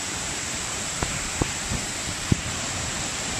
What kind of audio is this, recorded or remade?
remade